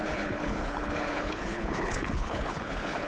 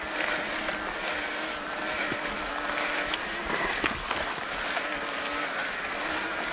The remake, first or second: first